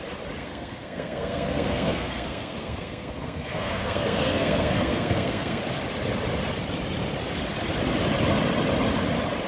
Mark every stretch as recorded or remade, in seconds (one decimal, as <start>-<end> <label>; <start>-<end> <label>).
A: 0.0-0.4 recorded; 0.4-5.6 remade; 5.6-9.5 recorded